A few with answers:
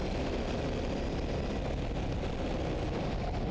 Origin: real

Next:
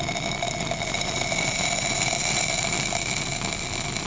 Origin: real